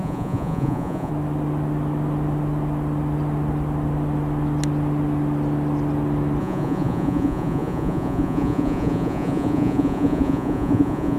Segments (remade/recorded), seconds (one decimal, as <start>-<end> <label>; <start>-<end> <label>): 0.0-1.1 remade; 1.1-6.4 recorded; 6.4-11.2 remade